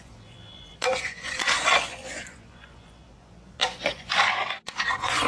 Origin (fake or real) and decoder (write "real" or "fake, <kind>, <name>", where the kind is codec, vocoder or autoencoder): fake, vocoder, Vocos